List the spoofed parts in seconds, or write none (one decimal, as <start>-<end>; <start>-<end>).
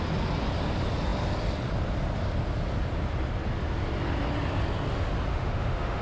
5.3-6.0